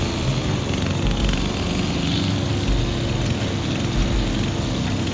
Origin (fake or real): real